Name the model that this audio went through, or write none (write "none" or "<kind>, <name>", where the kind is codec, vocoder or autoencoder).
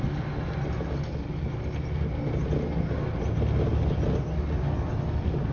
none